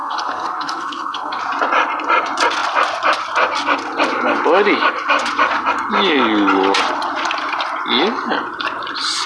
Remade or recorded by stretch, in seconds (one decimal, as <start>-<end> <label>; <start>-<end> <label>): 0.0-1.4 remade; 1.4-9.3 recorded